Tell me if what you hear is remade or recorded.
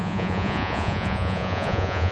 remade